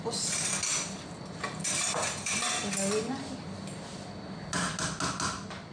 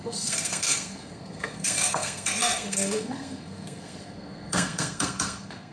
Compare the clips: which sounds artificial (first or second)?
second